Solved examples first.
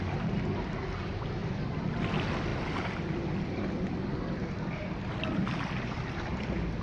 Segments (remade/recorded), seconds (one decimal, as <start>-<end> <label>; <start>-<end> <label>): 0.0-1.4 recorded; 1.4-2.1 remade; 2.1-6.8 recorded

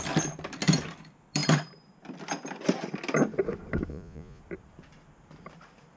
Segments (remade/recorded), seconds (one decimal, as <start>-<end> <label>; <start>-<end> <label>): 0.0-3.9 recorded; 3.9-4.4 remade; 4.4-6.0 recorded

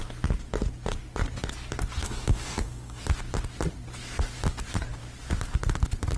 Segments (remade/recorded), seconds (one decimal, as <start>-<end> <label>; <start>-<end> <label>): 0.0-2.0 recorded; 2.0-3.0 remade; 3.0-6.2 recorded

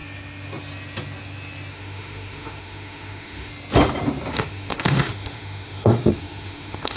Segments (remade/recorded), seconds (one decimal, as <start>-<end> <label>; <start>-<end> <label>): 0.0-1.7 recorded; 1.7-3.5 remade; 3.5-4.3 recorded; 4.3-7.0 remade

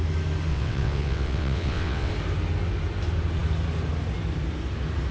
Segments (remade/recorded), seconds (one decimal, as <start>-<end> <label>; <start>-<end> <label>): 0.0-0.5 recorded; 0.5-2.1 remade; 2.1-5.1 recorded

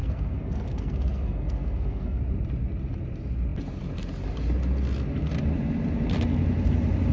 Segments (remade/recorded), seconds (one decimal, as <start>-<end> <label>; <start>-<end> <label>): 0.0-2.2 remade; 2.2-7.1 recorded

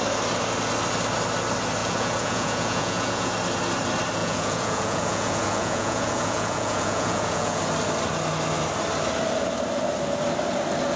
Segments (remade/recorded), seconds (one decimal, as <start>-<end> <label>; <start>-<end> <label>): 0.0-1.8 recorded; 1.8-3.3 remade; 3.3-4.2 recorded; 4.2-7.6 remade; 7.6-11.0 recorded

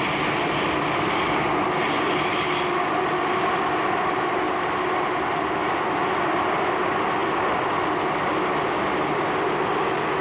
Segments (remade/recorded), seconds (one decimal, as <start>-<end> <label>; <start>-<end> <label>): 0.0-10.2 recorded